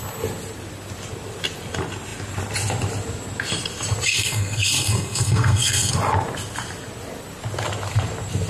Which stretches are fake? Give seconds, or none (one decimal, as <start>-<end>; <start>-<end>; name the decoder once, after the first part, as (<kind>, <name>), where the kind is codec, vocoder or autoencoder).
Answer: 4.1-5.9 (codec, SNAC)